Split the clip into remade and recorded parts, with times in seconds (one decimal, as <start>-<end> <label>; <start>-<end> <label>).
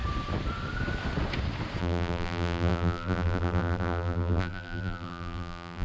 0.0-1.8 recorded; 1.8-5.8 remade